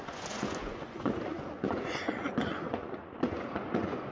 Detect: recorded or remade remade